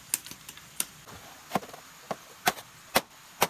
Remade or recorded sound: recorded